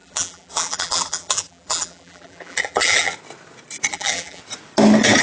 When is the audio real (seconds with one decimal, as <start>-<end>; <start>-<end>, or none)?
3.1-3.9; 4.4-5.2